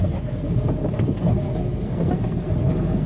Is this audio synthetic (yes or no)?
yes